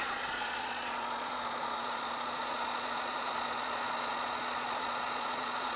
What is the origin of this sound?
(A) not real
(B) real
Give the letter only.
A